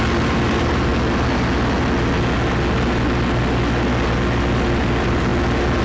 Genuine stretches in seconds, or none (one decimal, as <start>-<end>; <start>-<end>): 0.9-4.4; 5.3-5.8